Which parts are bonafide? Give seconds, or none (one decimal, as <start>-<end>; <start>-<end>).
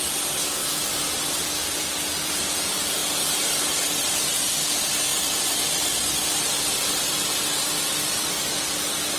0.0-0.6; 2.5-3.0; 4.5-5.1